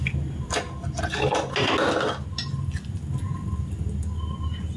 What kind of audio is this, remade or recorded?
recorded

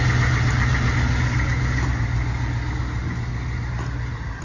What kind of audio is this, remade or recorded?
recorded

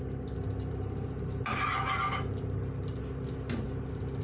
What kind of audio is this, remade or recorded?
recorded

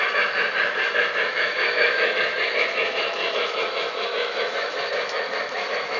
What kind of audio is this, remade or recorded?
remade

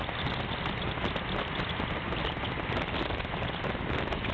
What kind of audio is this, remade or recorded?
recorded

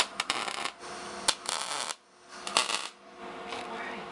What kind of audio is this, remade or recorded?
recorded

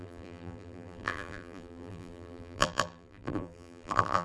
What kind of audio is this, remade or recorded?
remade